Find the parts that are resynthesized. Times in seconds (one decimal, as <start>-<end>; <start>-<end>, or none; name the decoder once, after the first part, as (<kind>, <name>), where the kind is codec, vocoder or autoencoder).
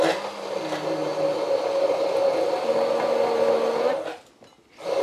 none